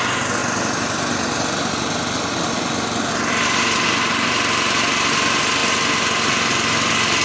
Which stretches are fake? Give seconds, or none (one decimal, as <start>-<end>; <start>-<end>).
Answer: none